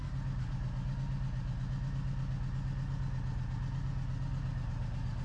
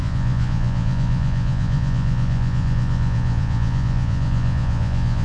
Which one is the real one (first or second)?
first